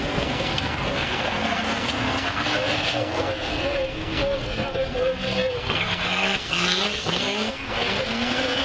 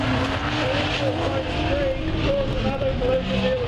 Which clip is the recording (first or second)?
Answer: second